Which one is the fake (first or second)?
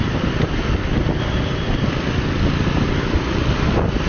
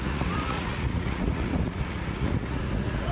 second